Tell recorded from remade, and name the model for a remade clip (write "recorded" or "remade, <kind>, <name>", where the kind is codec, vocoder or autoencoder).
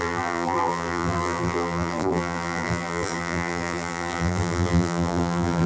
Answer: remade, vocoder, BigVGAN v2